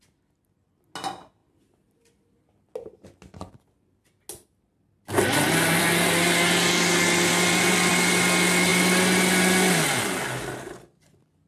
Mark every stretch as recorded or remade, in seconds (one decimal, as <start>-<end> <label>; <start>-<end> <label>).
0.0-7.3 recorded; 7.3-7.9 remade; 7.9-11.5 recorded